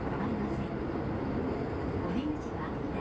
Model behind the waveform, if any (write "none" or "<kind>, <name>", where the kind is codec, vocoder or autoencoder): none